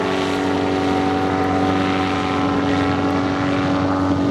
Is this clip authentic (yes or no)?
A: yes